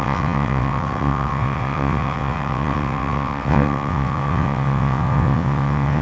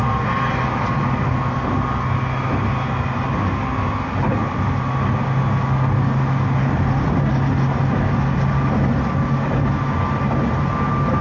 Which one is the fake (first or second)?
first